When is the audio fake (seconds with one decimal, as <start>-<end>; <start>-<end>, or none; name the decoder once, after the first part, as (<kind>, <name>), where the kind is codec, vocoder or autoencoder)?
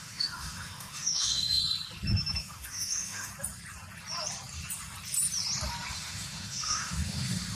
0.0-1.6 (autoencoder, DAC-VAE); 2.4-3.3; 5.9-7.5